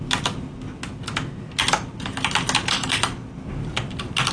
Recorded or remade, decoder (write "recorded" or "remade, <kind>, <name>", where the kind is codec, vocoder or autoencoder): recorded